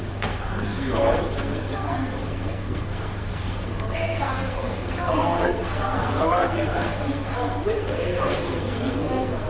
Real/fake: fake